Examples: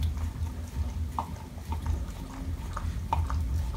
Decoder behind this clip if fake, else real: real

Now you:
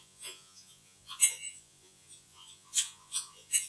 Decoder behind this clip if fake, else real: fake, vocoder, Vocos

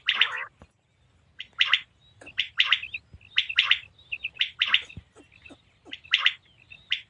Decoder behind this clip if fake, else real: real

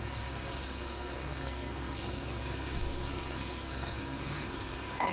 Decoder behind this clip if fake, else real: fake, codec, SNAC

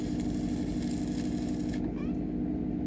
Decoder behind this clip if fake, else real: real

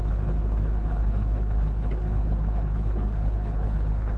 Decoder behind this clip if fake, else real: fake, codec, HILCodec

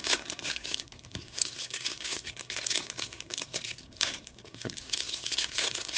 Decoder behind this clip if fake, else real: fake, codec, SNAC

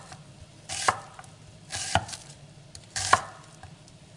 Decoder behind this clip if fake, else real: real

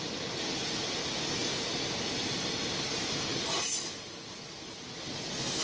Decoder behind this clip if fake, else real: real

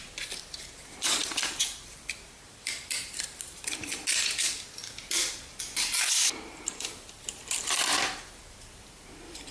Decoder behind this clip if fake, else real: fake, vocoder, BigVGAN v2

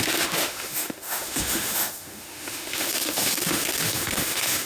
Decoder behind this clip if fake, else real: fake, autoencoder, DAC-VAE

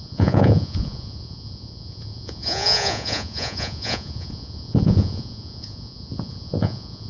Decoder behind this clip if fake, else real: fake, vocoder, Vocos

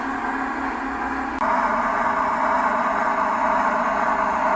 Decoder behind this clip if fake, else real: real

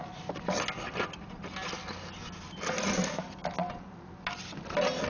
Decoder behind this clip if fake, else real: real